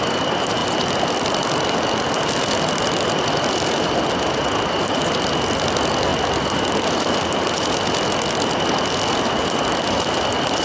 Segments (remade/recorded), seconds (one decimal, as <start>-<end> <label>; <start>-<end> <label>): 0.0-10.6 recorded